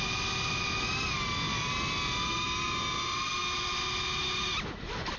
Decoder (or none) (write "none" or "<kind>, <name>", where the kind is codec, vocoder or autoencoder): none